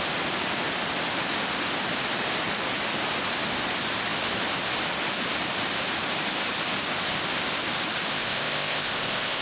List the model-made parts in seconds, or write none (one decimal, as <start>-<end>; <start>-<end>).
8.1-9.4